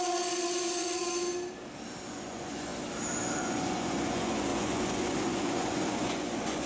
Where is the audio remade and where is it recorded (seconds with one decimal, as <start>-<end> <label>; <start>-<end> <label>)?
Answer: 0.0-1.0 remade; 1.0-2.1 recorded; 2.1-2.7 remade; 2.7-3.4 recorded; 3.4-6.7 remade